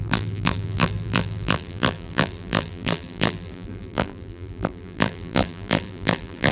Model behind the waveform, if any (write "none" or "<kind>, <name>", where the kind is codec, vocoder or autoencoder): vocoder, BigVGAN v2